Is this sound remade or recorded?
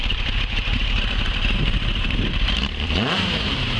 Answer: remade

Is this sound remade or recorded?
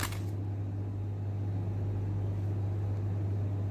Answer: recorded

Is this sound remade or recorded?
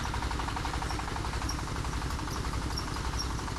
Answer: recorded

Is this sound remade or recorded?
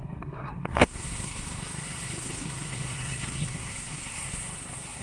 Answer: remade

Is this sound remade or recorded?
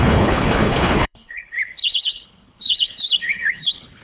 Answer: remade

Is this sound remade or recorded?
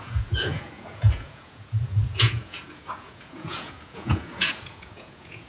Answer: remade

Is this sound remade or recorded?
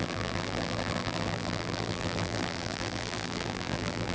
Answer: remade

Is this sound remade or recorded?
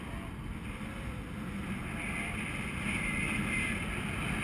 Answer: recorded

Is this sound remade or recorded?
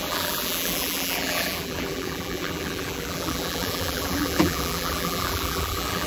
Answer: remade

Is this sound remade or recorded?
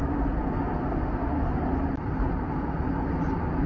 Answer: recorded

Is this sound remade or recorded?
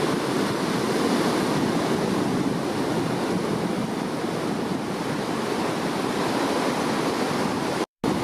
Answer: recorded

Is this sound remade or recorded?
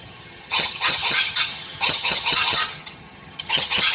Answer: remade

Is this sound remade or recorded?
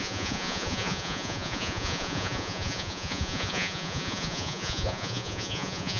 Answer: remade